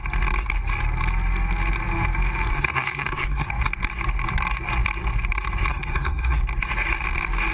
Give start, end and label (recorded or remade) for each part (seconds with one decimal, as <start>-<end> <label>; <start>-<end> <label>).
0.0-2.5 recorded; 2.5-3.5 remade; 3.5-5.7 recorded; 5.7-6.4 remade; 6.4-7.5 recorded